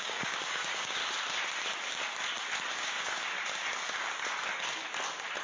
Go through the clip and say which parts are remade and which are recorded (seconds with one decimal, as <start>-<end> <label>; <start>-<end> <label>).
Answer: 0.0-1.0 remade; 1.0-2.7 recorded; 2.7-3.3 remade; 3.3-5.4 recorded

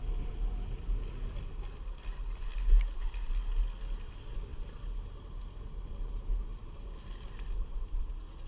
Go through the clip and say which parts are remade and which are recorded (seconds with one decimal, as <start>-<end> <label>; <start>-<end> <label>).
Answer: 0.0-6.5 recorded; 6.5-8.0 remade; 8.0-8.5 recorded

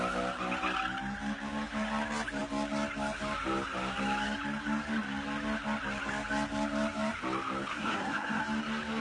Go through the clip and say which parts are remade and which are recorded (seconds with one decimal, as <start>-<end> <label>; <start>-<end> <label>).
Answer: 0.0-7.7 recorded; 7.7-8.4 remade; 8.4-9.0 recorded

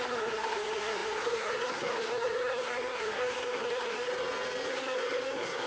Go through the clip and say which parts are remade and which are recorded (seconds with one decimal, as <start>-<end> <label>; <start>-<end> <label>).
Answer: 0.0-4.1 remade; 4.1-4.7 recorded; 4.7-5.7 remade

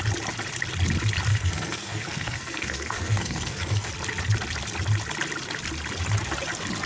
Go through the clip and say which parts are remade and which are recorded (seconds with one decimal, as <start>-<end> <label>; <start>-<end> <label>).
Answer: 0.0-1.3 recorded; 1.3-3.9 remade; 3.9-6.9 recorded